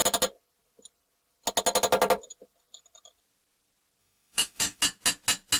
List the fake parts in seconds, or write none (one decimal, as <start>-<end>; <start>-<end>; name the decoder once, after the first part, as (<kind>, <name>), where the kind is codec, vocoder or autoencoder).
4.0-4.8 (autoencoder, DAC-VAE)